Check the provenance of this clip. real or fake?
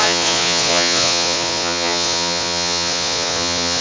fake